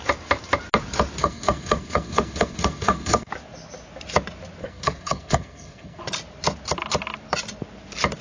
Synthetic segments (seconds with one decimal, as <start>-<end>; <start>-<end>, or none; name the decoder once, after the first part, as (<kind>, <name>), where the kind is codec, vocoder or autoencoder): 1.2-3.3 (codec, SNAC); 4.6-6.0